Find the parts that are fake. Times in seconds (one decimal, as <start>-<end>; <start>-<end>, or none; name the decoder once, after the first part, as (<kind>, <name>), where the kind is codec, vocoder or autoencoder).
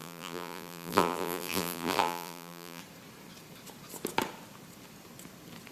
0.0-2.8 (vocoder, BigVGAN v2)